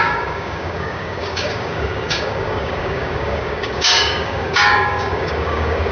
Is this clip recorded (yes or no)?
no